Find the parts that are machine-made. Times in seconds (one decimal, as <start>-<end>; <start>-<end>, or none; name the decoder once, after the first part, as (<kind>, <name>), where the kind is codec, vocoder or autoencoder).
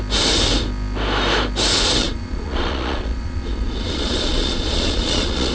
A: 2.0-5.5 (vocoder, Vocos)